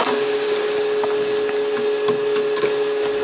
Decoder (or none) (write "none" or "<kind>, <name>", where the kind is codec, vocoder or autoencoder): none